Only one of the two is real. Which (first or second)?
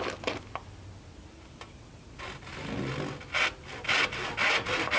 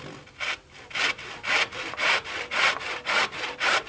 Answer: first